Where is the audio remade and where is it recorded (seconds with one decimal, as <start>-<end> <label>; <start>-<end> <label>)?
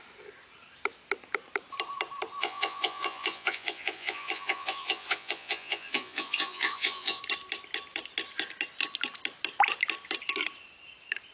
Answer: 0.0-2.4 recorded; 2.4-7.2 remade; 7.2-11.3 recorded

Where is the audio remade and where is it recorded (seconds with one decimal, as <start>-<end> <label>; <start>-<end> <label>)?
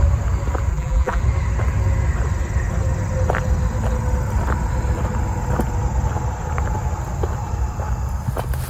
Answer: 0.0-0.7 recorded; 0.7-1.2 remade; 1.2-8.7 recorded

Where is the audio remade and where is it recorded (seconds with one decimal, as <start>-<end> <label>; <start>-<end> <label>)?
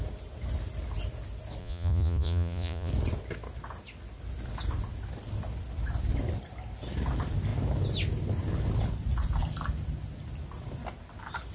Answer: 0.0-1.6 recorded; 1.6-2.9 remade; 2.9-11.5 recorded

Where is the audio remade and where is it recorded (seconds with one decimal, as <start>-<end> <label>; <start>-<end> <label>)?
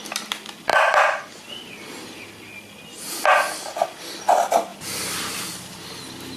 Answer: 0.0-0.7 recorded; 0.7-1.3 remade; 1.3-4.7 recorded; 4.7-5.4 remade; 5.4-6.4 recorded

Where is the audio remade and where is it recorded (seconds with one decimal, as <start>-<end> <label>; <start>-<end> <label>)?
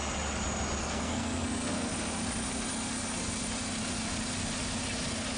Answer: 0.0-0.8 recorded; 0.8-1.9 remade; 1.9-5.4 recorded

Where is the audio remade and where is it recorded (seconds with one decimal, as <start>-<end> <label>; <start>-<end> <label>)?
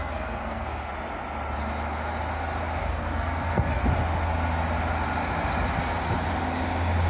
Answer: 0.0-0.9 remade; 0.9-2.8 recorded; 2.8-3.8 remade; 3.8-7.1 recorded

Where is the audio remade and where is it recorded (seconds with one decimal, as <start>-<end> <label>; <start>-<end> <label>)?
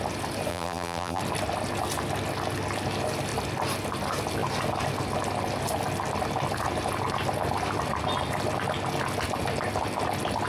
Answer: 0.0-0.5 recorded; 0.5-1.2 remade; 1.2-10.5 recorded